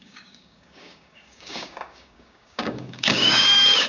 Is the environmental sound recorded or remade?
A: remade